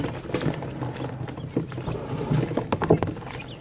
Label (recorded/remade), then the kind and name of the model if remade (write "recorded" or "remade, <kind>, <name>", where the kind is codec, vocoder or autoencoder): recorded